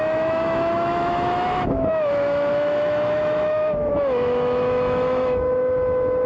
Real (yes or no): no